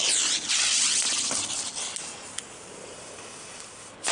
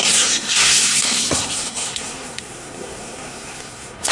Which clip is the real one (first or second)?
first